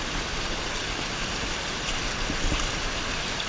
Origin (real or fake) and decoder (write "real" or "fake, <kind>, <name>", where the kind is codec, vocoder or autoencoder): real